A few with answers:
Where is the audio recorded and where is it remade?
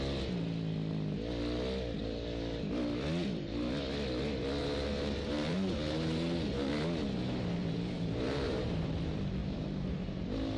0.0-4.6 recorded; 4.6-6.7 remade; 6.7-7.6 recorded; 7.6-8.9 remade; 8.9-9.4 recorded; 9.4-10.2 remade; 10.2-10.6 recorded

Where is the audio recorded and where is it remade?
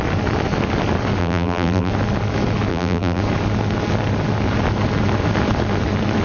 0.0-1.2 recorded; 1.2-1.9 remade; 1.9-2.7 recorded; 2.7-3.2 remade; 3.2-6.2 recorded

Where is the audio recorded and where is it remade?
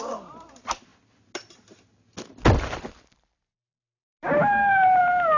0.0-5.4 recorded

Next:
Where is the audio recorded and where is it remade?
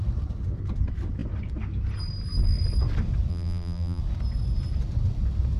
0.0-3.3 recorded; 3.3-4.0 remade; 4.0-5.6 recorded